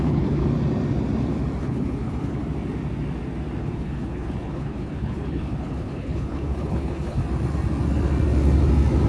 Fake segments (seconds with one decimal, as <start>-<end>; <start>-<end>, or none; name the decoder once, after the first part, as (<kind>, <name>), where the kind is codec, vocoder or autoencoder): 0.0-0.4 (codec, HILCodec); 1.6-2.4; 3.6-7.2